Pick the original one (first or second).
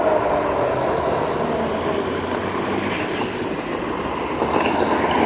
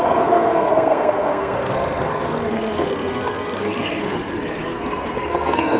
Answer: first